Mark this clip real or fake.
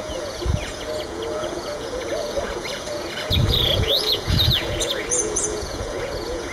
fake